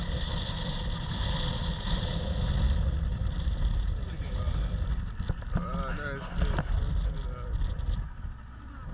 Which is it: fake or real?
real